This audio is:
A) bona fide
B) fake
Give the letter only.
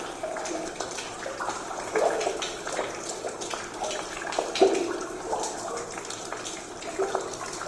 A